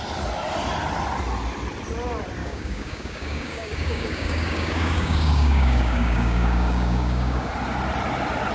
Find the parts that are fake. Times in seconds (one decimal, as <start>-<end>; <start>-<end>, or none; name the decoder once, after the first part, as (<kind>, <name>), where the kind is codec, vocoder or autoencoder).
2.4-7.5 (codec, DAC)